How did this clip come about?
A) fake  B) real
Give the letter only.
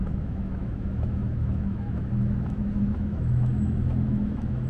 A